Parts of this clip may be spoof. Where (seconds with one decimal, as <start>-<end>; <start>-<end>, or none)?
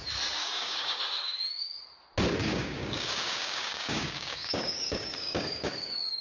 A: 0.4-1.0; 2.4-6.2